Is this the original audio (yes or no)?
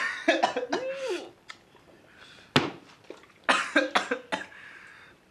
yes